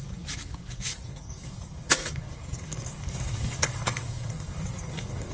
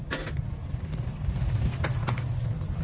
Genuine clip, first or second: second